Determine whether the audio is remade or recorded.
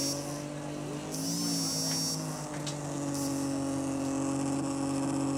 recorded